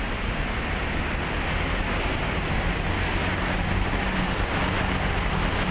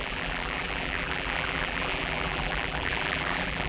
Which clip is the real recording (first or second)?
first